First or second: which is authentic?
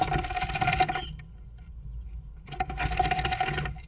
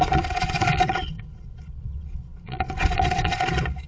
first